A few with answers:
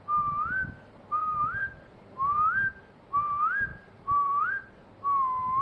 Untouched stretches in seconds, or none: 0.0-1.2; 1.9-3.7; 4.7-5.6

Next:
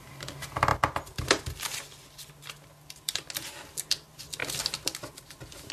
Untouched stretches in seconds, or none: 0.0-5.7

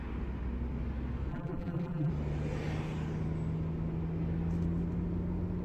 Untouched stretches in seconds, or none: 0.0-1.3; 2.1-5.6

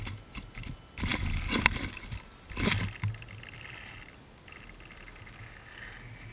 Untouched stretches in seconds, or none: 0.0-6.3

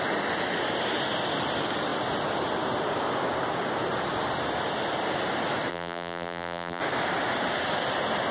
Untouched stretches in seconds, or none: 0.0-5.7; 6.8-8.3

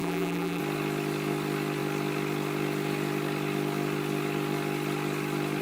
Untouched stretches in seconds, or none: 0.6-5.6

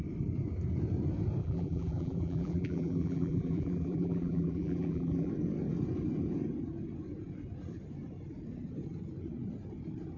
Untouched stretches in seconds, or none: 0.0-1.4; 5.3-10.2